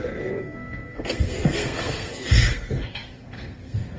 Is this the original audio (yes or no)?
no